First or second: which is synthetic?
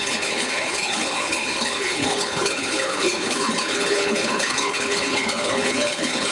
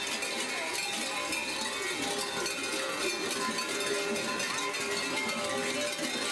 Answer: first